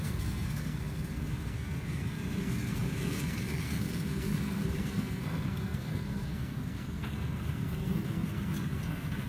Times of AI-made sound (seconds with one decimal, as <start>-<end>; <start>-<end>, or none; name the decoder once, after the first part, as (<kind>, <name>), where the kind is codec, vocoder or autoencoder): 0.0-9.3 (codec, SNAC)